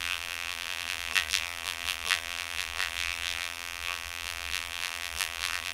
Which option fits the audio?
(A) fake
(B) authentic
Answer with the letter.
A